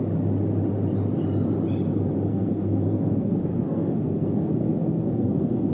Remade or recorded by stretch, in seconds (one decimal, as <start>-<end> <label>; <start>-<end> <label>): 0.0-2.3 recorded; 2.3-5.7 remade